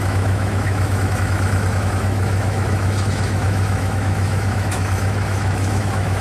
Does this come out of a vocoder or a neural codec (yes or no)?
yes